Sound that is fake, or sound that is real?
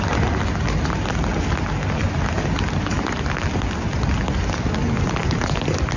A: real